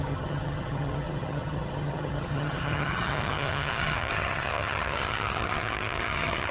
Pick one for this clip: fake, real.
fake